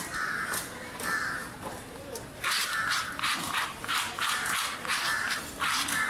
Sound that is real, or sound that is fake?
real